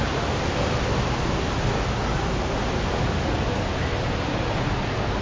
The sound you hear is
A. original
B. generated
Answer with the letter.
A